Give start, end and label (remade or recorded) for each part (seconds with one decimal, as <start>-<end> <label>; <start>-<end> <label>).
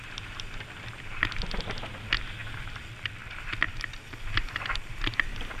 0.0-5.6 recorded